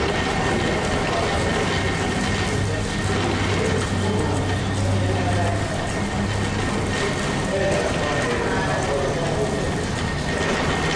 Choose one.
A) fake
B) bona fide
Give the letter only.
B